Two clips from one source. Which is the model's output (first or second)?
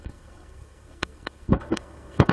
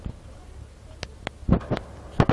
first